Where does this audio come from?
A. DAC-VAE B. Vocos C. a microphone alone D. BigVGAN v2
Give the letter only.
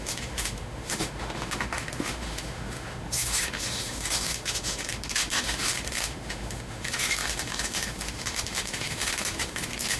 A